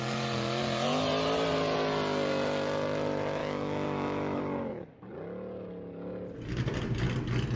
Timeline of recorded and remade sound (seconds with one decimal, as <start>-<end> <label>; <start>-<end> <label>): 0.0-3.4 recorded; 3.4-4.4 remade; 4.4-7.6 recorded